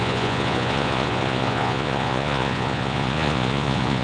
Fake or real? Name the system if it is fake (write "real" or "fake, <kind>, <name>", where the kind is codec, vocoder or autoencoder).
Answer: fake, vocoder, Vocos